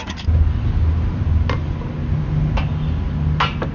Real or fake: real